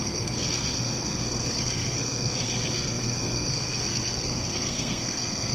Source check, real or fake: fake